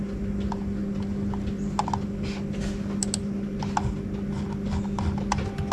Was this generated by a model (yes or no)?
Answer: no